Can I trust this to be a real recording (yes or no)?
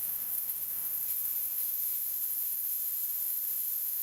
no